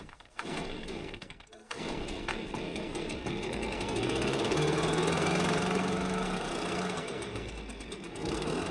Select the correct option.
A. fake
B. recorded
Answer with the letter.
A